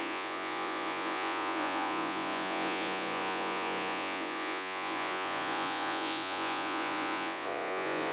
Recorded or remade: remade